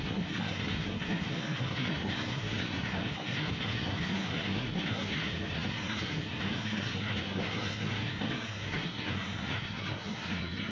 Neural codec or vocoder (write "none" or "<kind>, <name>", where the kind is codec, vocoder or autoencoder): codec, SNAC